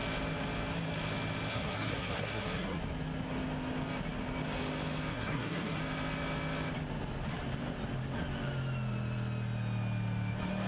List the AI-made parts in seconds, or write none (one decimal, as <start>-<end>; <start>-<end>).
1.5-2.8; 5.1-5.8